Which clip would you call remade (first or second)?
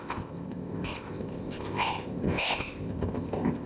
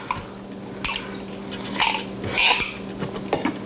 first